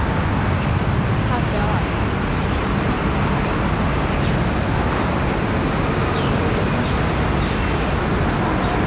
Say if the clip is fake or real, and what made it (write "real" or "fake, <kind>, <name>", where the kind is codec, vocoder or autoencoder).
real